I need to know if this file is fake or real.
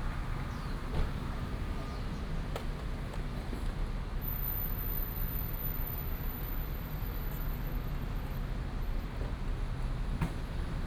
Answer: real